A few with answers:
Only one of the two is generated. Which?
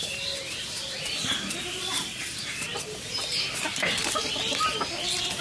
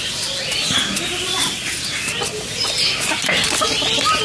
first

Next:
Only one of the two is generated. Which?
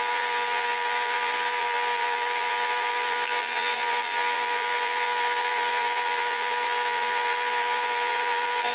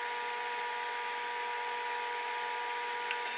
first